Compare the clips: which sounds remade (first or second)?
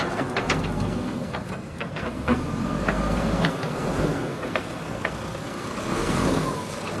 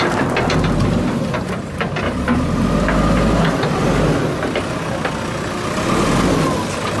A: first